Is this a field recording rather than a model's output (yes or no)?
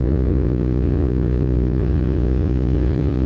no